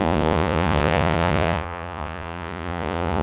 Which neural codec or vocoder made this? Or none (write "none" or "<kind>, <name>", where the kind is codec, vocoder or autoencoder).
vocoder, Vocos